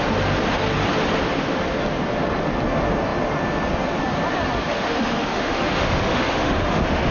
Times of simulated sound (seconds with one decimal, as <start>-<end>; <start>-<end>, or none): 4.7-7.1